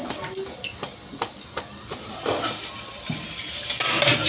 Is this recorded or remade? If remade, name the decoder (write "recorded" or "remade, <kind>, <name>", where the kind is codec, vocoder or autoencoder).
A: recorded